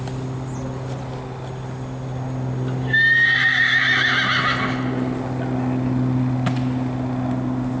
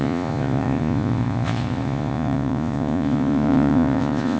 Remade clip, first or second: second